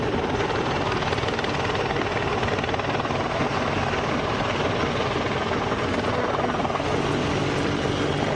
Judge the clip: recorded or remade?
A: recorded